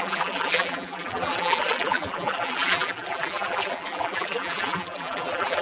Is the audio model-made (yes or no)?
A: yes